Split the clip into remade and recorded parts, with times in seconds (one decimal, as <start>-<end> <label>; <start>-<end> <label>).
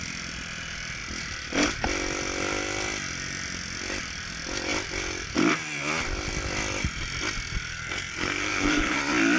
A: 0.0-7.7 recorded; 7.7-9.0 remade; 9.0-9.4 recorded